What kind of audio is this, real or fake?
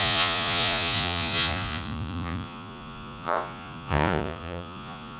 fake